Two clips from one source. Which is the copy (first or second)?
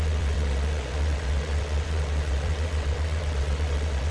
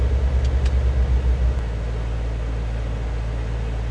first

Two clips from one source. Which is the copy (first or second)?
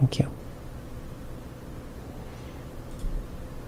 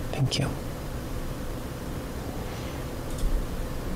second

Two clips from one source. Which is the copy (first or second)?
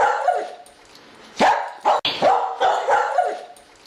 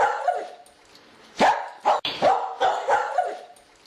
second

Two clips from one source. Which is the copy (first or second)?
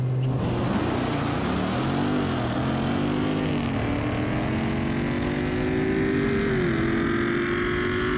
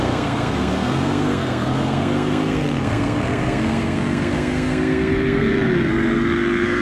second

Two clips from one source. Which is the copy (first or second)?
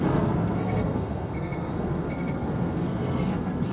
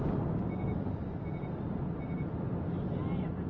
first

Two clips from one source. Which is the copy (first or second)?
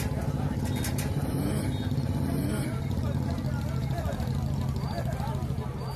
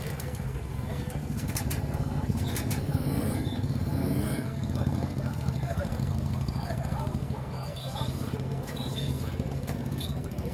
second